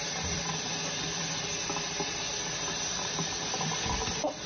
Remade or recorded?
recorded